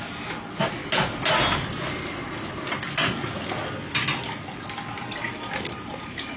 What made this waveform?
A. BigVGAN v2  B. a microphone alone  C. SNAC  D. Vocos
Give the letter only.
B